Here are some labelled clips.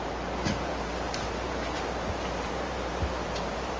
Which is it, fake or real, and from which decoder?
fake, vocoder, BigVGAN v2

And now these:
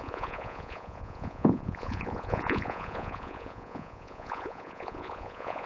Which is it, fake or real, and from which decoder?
fake, vocoder, Vocos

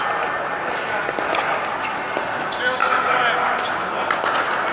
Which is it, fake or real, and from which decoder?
real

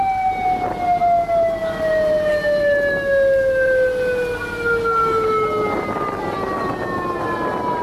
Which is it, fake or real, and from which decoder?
real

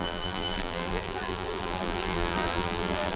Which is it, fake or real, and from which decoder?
fake, vocoder, BigVGAN v2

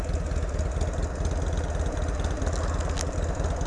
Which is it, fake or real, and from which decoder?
real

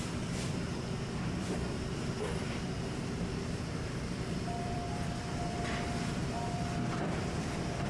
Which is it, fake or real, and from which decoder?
fake, vocoder, BigVGAN v2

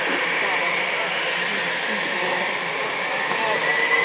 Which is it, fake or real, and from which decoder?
real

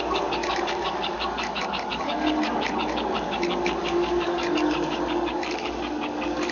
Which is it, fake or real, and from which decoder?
fake, codec, DAC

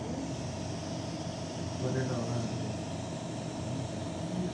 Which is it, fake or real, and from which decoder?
fake, vocoder, BigVGAN v2